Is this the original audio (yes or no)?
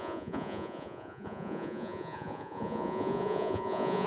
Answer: no